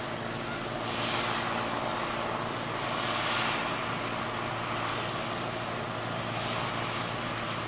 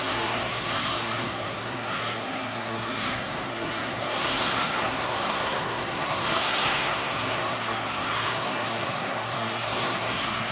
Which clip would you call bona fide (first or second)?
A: first